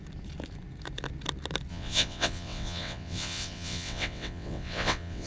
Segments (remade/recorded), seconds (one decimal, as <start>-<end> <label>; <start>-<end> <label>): 0.0-1.7 recorded; 1.7-5.3 remade